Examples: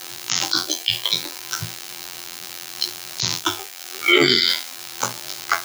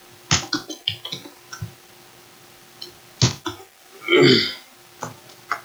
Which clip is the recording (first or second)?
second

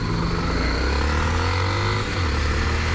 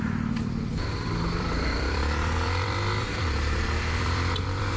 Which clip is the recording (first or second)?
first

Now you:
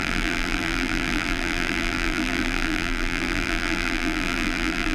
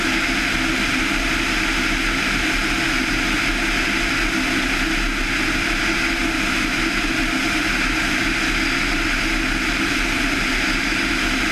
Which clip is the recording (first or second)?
second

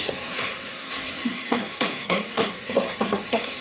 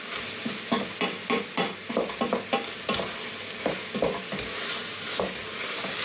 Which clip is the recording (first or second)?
second